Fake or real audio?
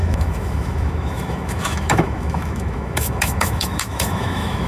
fake